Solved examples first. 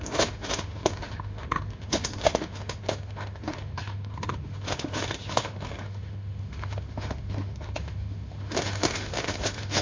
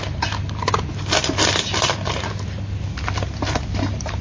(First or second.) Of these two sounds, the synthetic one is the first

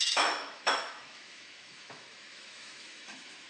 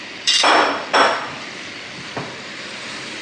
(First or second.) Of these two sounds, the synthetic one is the first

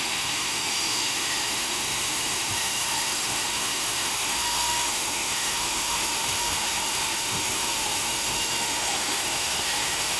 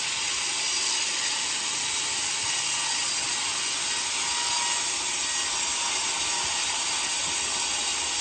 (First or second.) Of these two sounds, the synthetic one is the first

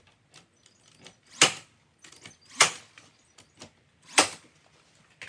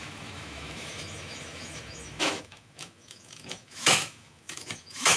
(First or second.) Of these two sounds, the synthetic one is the second